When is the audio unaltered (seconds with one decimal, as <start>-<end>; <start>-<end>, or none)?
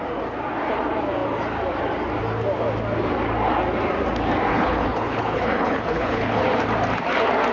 0.0-4.5; 6.4-7.5